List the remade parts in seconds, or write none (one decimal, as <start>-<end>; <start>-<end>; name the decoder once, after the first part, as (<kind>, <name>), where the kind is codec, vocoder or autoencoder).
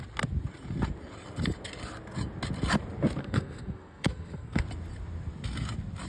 3.2-4.6 (codec, SNAC)